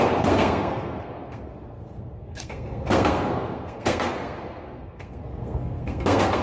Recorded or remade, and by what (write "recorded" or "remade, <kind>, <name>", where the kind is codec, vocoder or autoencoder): remade, codec, SNAC